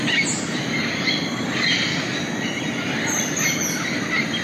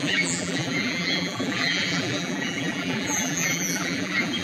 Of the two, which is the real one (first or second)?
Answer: first